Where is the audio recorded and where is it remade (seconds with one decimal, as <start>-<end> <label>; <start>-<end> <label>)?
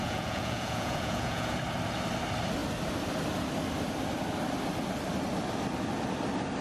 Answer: 0.0-1.6 remade; 1.6-6.6 recorded